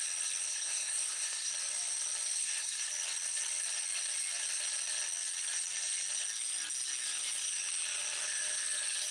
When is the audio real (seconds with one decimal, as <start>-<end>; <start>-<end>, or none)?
0.0-0.5; 1.5-2.4; 2.9-9.1